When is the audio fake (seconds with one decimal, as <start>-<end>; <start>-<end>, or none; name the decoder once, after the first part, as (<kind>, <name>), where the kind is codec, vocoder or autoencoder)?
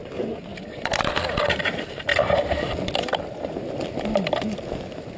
none